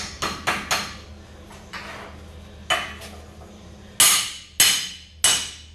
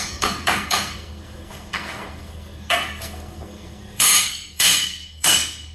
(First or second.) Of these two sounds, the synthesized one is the second